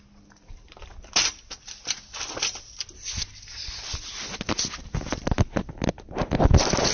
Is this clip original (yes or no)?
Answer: yes